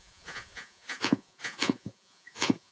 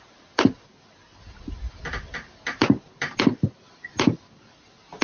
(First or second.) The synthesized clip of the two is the first